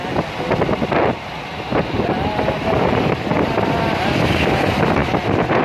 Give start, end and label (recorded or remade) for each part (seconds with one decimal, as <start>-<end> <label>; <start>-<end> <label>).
0.0-1.7 recorded; 1.7-4.5 remade; 4.5-5.0 recorded; 5.0-5.6 remade